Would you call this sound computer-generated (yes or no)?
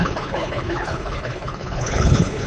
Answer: yes